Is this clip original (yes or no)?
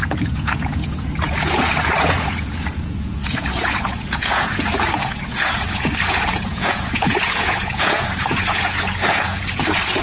no